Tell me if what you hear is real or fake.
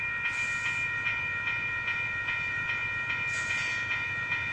fake